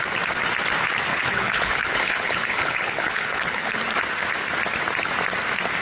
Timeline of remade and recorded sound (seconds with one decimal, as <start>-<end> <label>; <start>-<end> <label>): 0.0-1.1 recorded; 1.1-3.8 remade; 3.8-5.8 recorded